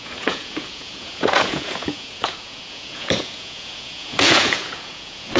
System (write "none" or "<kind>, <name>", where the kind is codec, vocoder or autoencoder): vocoder, Vocos